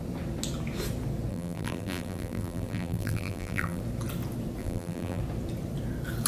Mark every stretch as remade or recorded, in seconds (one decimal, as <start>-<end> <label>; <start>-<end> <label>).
0.0-1.3 recorded; 1.3-3.8 remade; 3.8-4.6 recorded; 4.6-5.2 remade; 5.2-6.3 recorded